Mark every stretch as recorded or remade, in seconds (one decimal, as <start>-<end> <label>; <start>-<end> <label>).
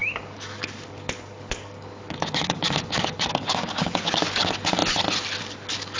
0.0-4.8 remade; 4.8-5.4 recorded; 5.4-6.0 remade